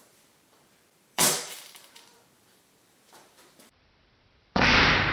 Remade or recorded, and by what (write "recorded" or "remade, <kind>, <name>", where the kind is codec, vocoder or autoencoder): remade, vocoder, BigVGAN v2